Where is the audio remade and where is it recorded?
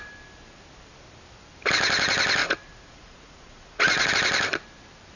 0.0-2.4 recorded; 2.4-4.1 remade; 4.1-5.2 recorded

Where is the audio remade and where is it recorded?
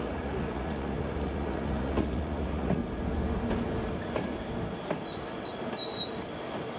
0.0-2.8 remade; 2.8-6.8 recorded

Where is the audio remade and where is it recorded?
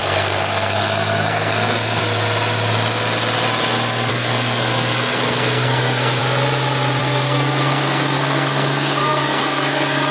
0.0-2.0 remade; 2.0-4.1 recorded; 4.1-6.2 remade; 6.2-7.0 recorded; 7.0-10.1 remade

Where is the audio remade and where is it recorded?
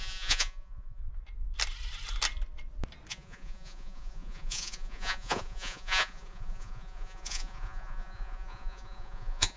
0.0-1.0 remade; 1.0-3.1 recorded; 3.1-9.6 remade